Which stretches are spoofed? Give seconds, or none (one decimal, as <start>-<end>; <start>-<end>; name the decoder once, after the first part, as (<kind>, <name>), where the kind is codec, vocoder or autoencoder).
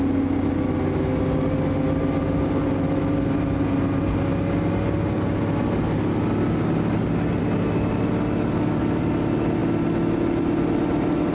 none